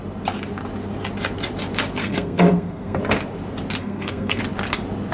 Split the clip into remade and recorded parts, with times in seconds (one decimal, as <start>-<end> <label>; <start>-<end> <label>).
0.0-2.0 recorded; 2.0-3.0 remade; 3.0-3.8 recorded; 3.8-4.4 remade; 4.4-5.1 recorded